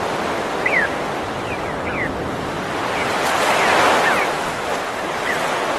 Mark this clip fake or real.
real